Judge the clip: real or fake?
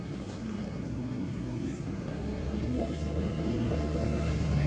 fake